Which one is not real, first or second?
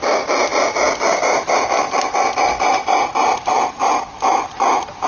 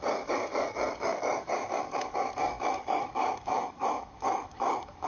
second